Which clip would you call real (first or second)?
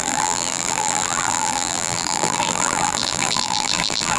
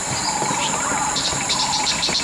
second